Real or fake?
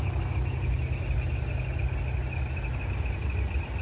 real